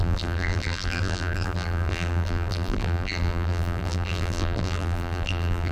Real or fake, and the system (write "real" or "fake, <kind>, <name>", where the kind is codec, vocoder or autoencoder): fake, vocoder, BigVGAN v2